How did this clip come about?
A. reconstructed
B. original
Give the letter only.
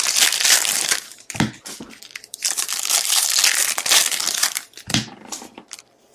B